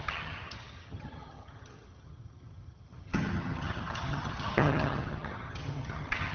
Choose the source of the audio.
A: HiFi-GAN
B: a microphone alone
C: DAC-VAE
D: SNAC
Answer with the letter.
A